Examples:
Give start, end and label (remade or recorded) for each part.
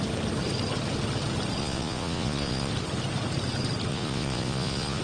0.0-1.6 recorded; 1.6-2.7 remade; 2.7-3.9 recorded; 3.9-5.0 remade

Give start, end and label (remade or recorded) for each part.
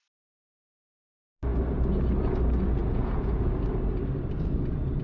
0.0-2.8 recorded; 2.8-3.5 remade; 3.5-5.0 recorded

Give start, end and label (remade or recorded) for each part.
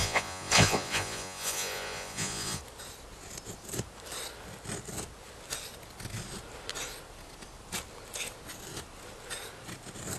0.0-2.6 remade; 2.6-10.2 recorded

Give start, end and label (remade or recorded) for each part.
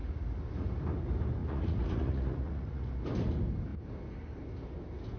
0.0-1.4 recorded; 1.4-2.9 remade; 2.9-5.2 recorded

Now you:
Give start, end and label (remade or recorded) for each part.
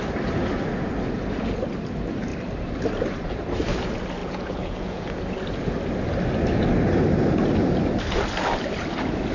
0.0-4.2 recorded; 4.2-5.2 remade; 5.2-9.3 recorded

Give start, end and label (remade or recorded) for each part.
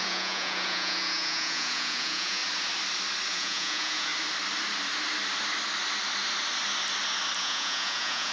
0.0-2.4 remade; 2.4-3.3 recorded; 3.3-4.1 remade; 4.1-7.4 recorded; 7.4-8.3 remade